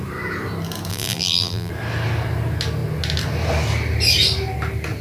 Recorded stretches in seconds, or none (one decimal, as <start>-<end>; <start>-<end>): 0.0-0.9; 1.7-5.0